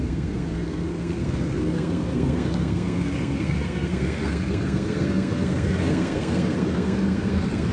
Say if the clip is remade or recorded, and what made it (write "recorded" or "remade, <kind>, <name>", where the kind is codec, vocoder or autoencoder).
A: remade, codec, SNAC